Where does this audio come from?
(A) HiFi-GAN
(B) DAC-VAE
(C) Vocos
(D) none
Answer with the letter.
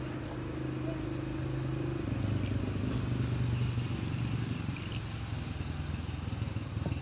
D